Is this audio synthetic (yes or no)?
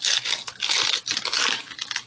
no